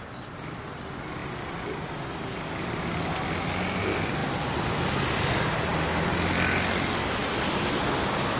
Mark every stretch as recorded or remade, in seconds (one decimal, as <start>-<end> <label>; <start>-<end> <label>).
0.0-8.4 recorded